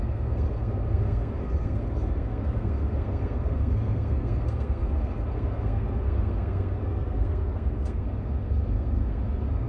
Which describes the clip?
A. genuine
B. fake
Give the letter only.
B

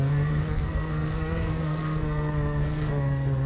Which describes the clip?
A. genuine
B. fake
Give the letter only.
B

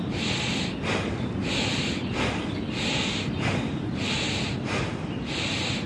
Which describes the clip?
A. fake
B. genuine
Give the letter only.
B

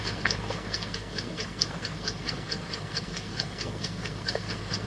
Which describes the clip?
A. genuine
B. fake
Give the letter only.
B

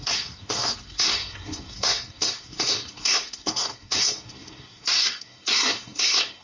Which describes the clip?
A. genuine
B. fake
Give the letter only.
B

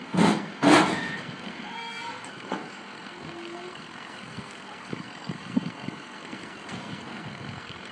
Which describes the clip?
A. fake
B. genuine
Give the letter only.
A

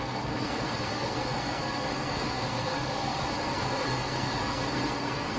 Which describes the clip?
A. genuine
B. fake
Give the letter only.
B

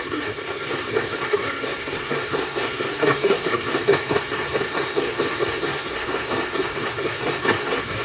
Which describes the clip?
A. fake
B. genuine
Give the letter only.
A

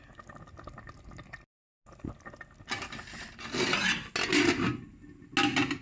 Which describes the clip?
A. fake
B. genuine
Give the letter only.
B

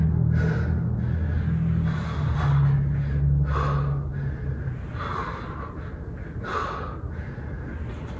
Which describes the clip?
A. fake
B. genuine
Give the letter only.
B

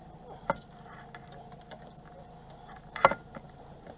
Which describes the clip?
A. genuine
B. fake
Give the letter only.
A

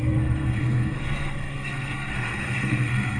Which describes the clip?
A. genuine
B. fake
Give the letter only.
B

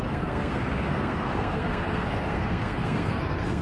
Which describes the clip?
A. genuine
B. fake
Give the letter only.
B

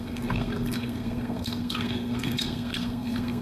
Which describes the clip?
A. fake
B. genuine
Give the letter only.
A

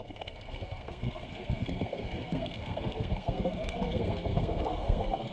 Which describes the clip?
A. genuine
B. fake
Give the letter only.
B